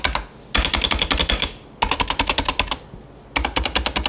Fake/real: real